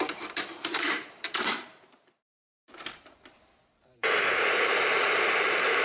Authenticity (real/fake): fake